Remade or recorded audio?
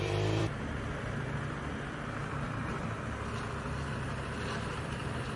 remade